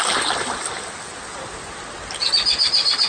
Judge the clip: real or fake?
real